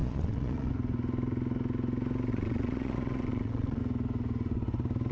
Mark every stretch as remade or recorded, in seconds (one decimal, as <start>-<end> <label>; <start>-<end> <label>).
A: 0.0-0.7 remade; 0.7-2.3 recorded; 2.3-3.8 remade; 3.8-5.1 recorded